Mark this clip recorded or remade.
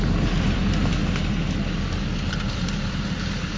remade